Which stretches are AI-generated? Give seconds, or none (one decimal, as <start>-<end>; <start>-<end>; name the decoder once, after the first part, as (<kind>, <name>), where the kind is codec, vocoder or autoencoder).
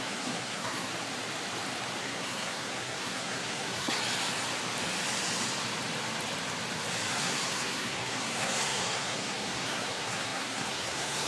0.0-0.9 (codec, SNAC); 2.0-4.0; 7.1-11.3